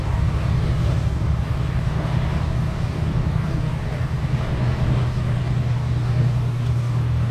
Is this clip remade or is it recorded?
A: remade